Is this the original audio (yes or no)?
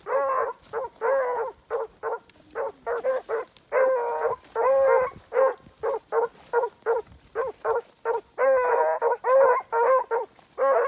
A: yes